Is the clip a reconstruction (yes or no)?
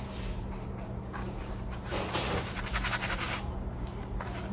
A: yes